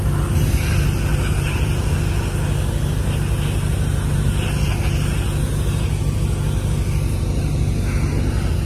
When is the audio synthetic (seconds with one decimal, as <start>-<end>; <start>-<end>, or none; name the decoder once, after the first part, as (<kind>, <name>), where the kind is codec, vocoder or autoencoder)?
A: 1.1-1.9 (vocoder, BigVGAN v2)

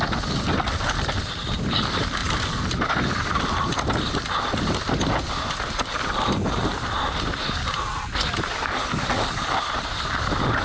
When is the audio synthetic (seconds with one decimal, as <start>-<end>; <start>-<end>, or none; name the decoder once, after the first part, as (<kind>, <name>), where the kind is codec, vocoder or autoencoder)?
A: 0.0-2.2 (vocoder, BigVGAN v2); 7.1-10.6

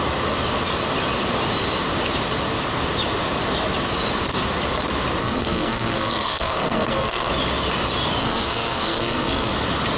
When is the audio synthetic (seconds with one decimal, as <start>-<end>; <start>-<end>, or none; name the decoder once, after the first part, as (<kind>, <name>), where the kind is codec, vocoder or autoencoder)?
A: 5.2-7.3 (codec, SNAC); 8.2-9.5

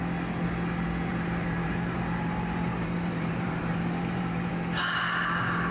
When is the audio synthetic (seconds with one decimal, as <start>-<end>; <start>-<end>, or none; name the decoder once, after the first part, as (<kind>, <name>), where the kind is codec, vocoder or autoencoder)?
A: 1.1-4.5 (vocoder, BigVGAN v2)

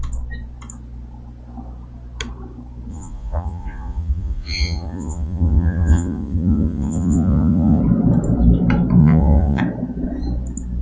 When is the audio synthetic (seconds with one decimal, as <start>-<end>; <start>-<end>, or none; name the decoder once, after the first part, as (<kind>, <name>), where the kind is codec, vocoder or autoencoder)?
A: 2.9-7.8 (vocoder, Vocos); 9.0-9.6

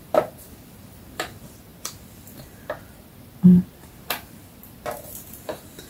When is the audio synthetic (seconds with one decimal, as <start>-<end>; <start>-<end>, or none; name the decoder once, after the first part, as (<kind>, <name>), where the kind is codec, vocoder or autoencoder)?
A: 0.0-5.9 (vocoder, BigVGAN v2)